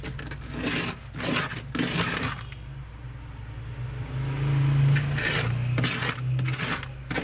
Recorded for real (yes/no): yes